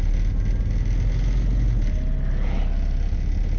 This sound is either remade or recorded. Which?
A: recorded